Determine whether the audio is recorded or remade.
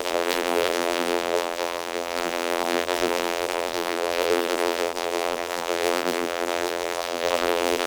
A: remade